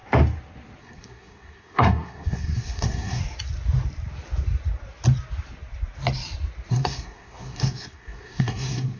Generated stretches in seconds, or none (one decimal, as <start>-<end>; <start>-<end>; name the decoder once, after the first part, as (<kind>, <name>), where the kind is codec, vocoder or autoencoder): 0.8-3.2 (codec, SNAC); 6.7-9.0